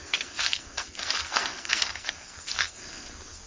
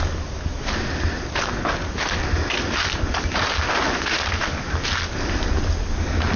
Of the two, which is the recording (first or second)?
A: second